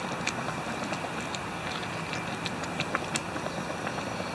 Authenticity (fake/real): real